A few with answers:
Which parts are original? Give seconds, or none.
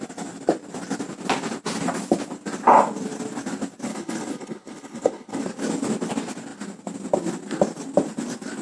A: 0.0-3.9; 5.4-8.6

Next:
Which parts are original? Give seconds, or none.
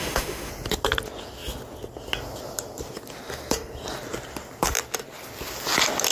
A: 0.5-6.1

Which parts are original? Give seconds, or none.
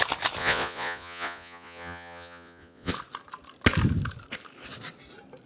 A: 0.0-0.4; 2.9-5.5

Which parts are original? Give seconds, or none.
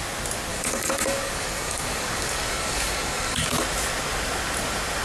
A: 0.0-0.5; 3.5-5.0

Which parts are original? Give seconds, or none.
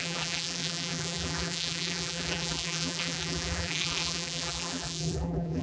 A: none